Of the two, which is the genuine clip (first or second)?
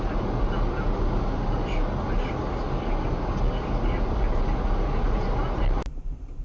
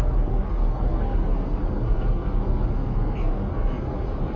first